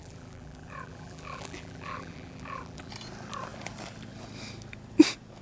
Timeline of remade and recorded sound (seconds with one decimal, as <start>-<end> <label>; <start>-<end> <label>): 0.0-2.9 remade; 2.9-5.4 recorded